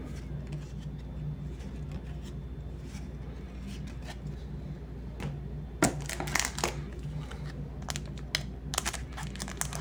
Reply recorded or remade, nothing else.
recorded